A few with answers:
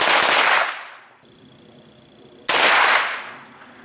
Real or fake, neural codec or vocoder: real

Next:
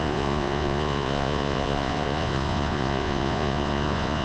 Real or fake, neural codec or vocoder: fake, vocoder, Vocos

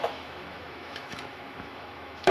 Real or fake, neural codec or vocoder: fake, autoencoder, DAC-VAE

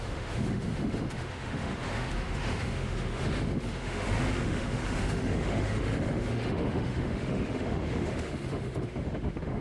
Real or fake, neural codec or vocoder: fake, autoencoder, DAC-VAE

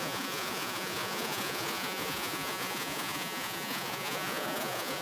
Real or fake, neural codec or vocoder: fake, vocoder, Vocos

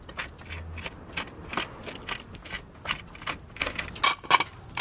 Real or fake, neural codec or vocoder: real